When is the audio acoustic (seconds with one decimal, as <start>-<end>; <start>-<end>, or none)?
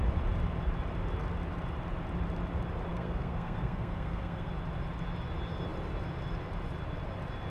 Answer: 0.0-2.9; 4.5-7.5